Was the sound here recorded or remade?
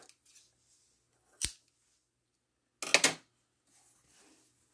recorded